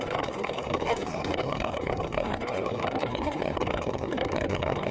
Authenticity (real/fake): fake